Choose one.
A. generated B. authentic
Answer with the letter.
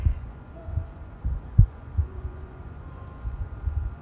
A